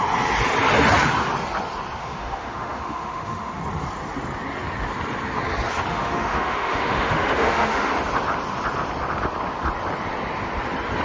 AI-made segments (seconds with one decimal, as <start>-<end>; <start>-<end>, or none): 2.0-3.6; 5.9-7.9